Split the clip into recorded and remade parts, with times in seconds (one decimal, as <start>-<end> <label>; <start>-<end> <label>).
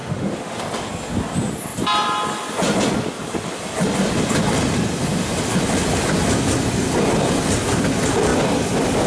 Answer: 0.0-0.6 remade; 0.6-9.1 recorded